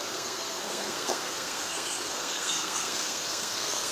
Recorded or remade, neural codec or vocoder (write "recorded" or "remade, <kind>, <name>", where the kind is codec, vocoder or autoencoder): remade, codec, SNAC